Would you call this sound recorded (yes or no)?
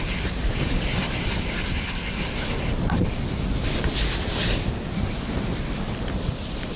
yes